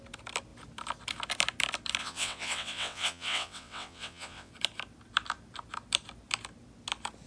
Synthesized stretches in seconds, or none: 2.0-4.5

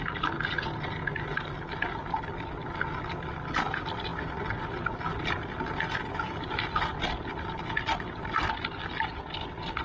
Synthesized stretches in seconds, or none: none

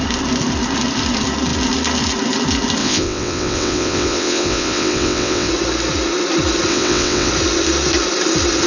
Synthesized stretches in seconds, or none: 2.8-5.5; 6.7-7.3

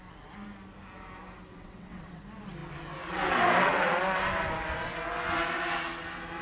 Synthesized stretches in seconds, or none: 1.5-2.2

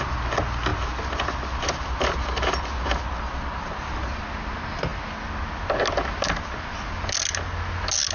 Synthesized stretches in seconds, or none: none

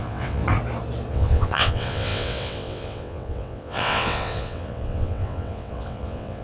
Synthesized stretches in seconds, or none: 0.0-0.4; 1.1-6.4